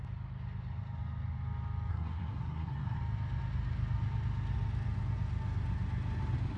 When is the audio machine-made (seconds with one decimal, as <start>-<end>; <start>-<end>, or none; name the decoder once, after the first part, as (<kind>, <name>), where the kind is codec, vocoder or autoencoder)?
1.9-3.0 (codec, SNAC)